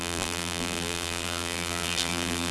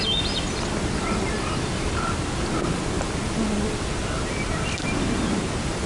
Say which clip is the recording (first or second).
second